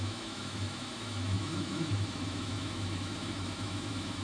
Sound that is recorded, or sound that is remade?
remade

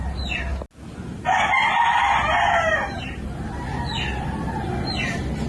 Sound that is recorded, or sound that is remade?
recorded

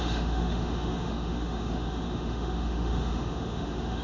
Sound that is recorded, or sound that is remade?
remade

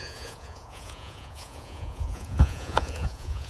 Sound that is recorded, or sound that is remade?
remade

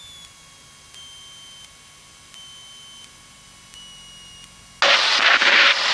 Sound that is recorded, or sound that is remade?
recorded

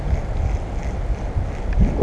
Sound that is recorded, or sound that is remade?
recorded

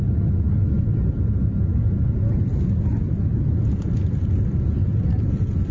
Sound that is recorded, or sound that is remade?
recorded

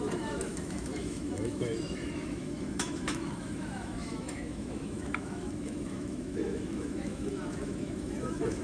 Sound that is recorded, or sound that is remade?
remade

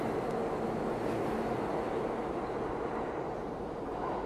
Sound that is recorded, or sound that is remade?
recorded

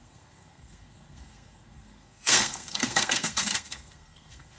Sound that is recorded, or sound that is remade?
remade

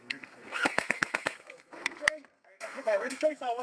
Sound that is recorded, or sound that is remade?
remade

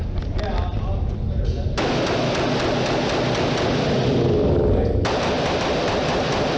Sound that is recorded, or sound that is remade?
recorded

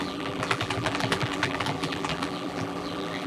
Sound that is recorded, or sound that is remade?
remade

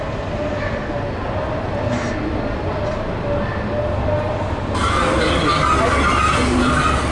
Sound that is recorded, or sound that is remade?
recorded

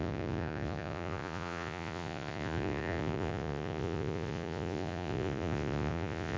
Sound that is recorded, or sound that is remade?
remade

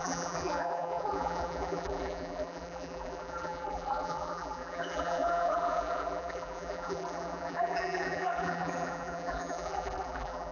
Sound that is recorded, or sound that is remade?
remade